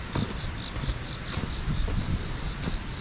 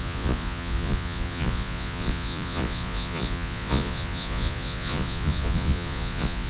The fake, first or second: second